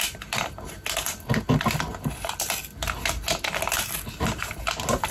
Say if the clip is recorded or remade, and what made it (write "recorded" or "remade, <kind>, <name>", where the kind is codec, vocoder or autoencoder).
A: recorded